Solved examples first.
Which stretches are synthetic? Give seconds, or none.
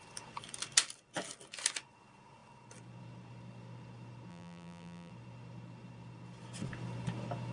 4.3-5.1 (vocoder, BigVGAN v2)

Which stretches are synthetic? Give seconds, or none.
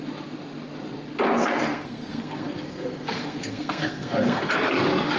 1.4-4.5 (codec, SNAC)